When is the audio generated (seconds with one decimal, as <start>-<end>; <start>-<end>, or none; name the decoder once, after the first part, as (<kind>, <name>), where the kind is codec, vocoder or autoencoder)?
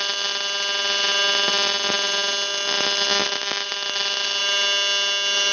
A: none